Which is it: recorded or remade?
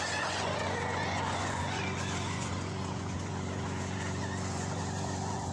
remade